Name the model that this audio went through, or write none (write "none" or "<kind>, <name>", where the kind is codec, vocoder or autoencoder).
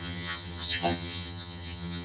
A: vocoder, HiFi-GAN